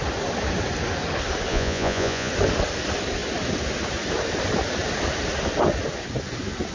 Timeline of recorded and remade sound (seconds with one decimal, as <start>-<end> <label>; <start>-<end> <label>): 0.0-1.5 recorded; 1.5-2.3 remade; 2.3-6.7 recorded